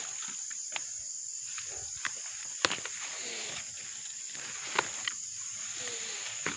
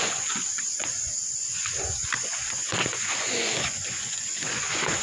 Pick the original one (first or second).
first